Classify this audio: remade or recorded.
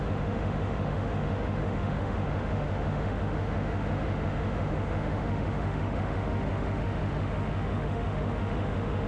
remade